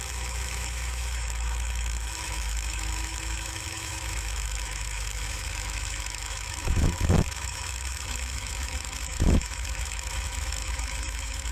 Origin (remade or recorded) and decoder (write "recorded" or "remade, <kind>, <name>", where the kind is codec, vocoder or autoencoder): remade, autoencoder, DAC-VAE